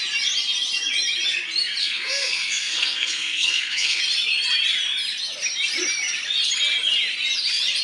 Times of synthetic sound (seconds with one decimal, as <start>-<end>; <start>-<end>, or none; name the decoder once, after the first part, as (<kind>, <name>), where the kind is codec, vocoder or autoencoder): 1.8-4.0 (codec, SNAC)